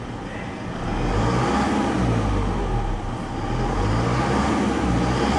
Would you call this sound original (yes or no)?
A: yes